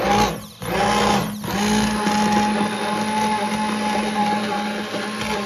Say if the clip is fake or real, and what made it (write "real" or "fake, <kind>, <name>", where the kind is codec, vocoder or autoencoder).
real